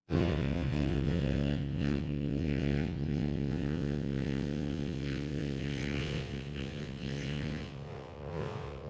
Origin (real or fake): fake